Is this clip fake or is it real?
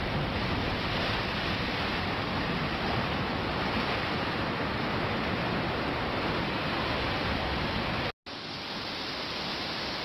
real